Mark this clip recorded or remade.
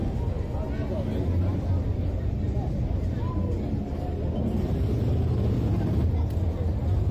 recorded